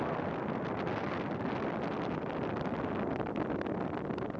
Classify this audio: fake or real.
real